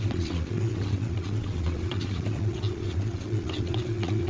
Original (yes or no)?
no